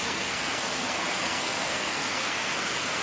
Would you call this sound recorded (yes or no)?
no